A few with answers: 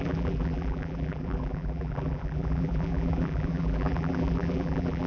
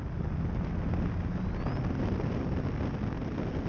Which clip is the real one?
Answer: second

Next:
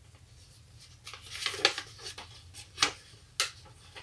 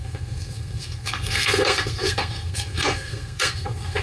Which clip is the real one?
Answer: first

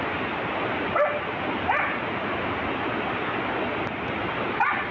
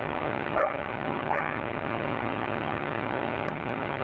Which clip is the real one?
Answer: first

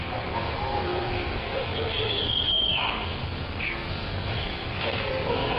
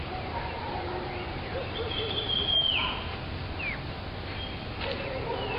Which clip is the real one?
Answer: second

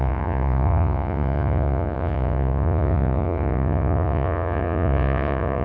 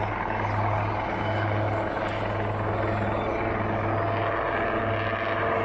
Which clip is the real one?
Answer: second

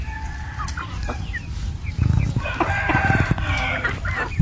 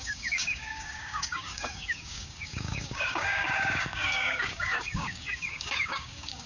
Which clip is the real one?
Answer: first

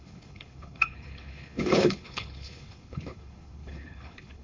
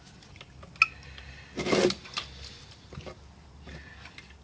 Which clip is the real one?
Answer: second